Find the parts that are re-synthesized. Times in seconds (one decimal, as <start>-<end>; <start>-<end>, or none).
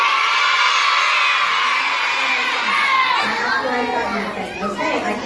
1.5-3.2